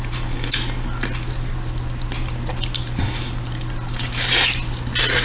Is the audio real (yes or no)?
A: yes